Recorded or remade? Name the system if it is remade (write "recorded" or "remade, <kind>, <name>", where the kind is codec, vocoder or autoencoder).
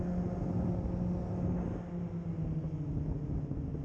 recorded